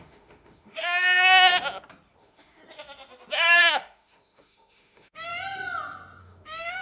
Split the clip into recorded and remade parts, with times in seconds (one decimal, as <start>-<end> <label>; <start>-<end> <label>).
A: 0.0-1.5 remade; 1.5-2.2 recorded; 2.2-2.6 remade; 2.6-3.6 recorded; 3.6-5.3 remade; 5.3-6.2 recorded; 6.2-6.8 remade